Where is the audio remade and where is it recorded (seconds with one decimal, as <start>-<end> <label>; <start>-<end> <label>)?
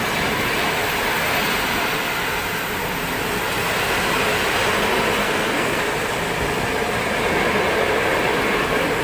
0.0-5.2 recorded; 5.2-5.8 remade; 5.8-9.0 recorded